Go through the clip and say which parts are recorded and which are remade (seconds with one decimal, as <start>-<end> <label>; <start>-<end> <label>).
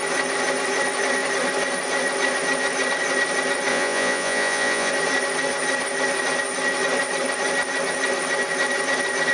0.0-3.7 recorded; 3.7-4.9 remade; 4.9-9.3 recorded